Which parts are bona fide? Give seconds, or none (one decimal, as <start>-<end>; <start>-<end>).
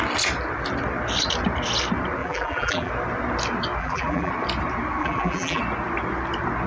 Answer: 0.0-2.2; 2.9-3.8; 4.3-5.0; 5.6-6.7